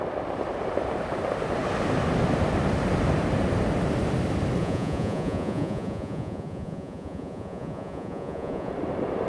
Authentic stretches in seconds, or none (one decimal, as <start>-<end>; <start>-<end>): 0.0-4.6; 8.7-9.3